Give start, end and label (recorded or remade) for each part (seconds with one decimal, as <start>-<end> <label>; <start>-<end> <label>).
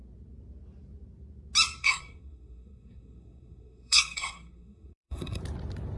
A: 0.0-1.8 recorded; 1.8-5.4 remade; 5.4-6.0 recorded